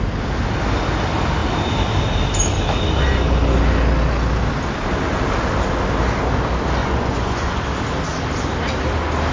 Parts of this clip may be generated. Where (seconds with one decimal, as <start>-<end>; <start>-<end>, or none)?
6.8-7.6